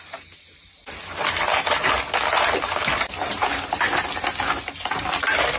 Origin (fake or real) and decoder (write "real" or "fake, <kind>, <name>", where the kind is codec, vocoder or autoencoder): real